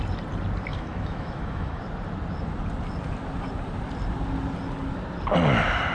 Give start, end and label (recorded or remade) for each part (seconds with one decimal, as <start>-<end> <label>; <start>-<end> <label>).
0.0-0.7 recorded; 0.7-1.8 remade; 1.8-5.9 recorded